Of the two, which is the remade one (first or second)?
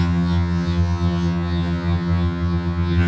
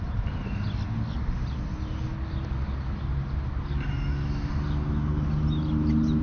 first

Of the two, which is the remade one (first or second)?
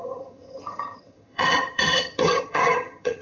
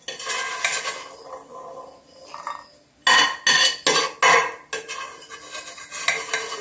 first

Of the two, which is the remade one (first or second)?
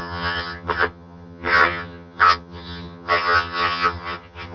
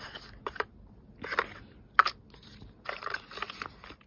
first